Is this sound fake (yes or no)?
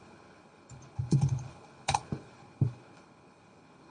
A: yes